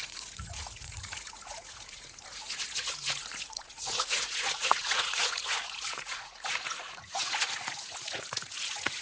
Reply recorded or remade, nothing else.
remade